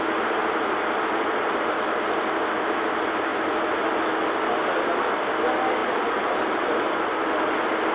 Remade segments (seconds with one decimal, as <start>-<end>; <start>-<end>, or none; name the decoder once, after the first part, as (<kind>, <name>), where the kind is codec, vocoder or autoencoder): 5.8-7.5 (vocoder, BigVGAN v2)